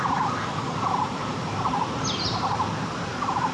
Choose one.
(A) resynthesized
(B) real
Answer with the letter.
A